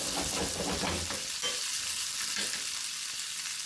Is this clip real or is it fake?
real